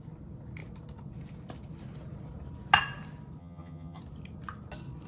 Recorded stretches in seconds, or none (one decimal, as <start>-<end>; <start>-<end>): 0.0-3.4; 4.0-5.1